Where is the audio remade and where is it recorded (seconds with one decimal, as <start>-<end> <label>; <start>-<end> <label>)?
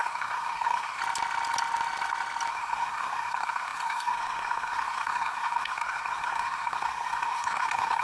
0.0-1.0 remade; 1.0-2.5 recorded; 2.5-8.0 remade